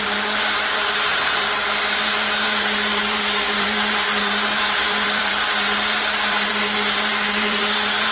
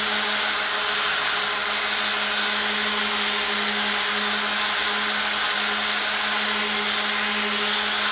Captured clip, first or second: second